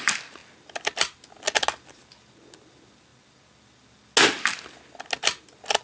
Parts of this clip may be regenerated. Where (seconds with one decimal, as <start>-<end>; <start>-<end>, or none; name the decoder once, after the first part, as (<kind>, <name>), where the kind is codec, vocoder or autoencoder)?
none